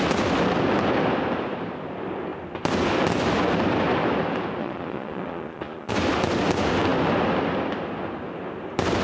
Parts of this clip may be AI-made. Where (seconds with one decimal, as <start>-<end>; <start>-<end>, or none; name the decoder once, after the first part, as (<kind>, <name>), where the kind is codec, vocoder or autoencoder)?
4.6-5.9 (vocoder, Vocos)